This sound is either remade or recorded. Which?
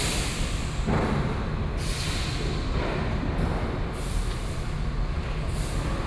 recorded